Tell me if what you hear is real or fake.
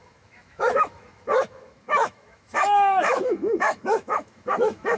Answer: fake